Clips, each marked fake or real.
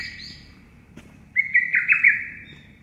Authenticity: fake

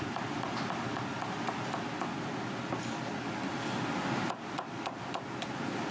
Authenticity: real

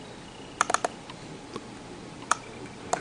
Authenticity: real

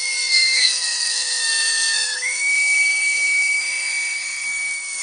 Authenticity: fake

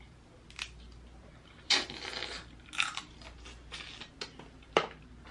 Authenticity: real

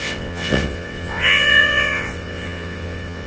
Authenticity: fake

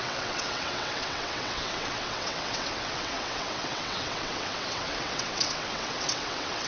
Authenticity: fake